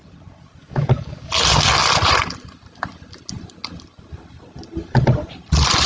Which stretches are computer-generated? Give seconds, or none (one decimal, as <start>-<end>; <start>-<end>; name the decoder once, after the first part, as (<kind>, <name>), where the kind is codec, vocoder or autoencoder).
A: 0.6-1.3 (codec, DAC)